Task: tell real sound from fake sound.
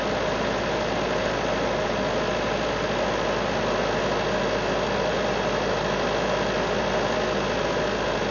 real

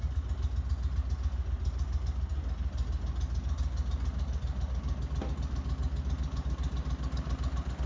real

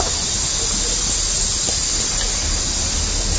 real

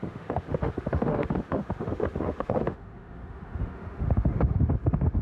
fake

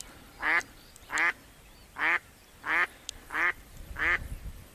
real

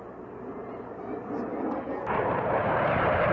real